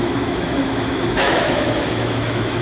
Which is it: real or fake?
fake